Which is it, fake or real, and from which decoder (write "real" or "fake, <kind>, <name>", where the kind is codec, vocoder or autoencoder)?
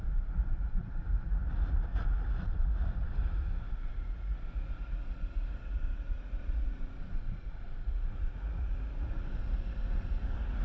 fake, vocoder, Vocos